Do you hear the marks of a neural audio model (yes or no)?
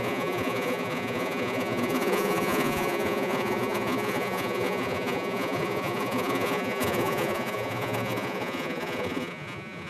yes